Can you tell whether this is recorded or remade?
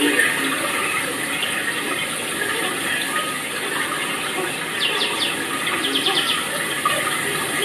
recorded